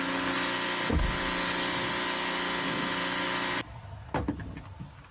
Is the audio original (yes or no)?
yes